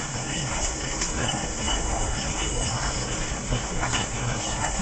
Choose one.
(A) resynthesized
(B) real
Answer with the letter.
A